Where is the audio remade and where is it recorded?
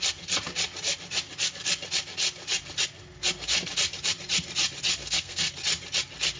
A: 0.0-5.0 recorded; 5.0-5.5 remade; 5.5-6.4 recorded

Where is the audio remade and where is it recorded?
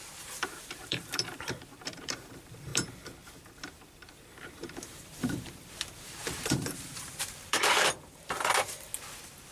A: 0.0-2.7 remade; 2.7-4.1 recorded; 4.1-8.9 remade; 8.9-9.5 recorded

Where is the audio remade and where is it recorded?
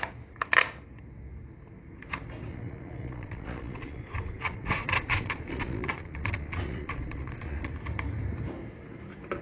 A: 0.0-2.5 recorded; 2.5-7.7 remade; 7.7-9.4 recorded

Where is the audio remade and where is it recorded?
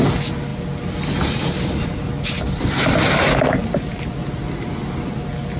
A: 0.0-0.5 recorded; 0.5-2.7 remade; 2.7-3.6 recorded; 3.6-4.2 remade; 4.2-5.6 recorded